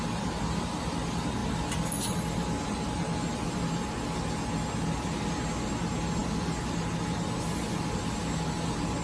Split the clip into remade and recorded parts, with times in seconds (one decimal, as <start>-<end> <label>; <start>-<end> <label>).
0.0-9.0 recorded

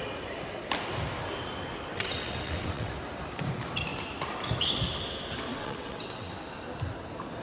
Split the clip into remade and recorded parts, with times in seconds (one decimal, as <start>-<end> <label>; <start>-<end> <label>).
0.0-1.9 recorded; 1.9-2.9 remade; 2.9-5.5 recorded; 5.5-6.3 remade; 6.3-7.4 recorded